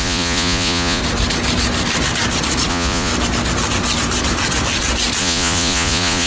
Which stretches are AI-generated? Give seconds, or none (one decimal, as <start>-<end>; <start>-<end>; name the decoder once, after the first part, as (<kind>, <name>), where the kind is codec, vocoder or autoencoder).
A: 0.0-1.0 (vocoder, Vocos); 2.7-3.1; 5.2-6.3